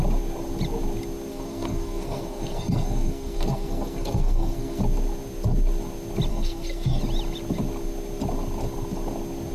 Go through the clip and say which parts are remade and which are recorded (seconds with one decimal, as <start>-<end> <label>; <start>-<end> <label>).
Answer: 0.0-1.3 recorded; 1.3-4.8 remade; 4.8-6.3 recorded; 6.3-7.0 remade; 7.0-9.5 recorded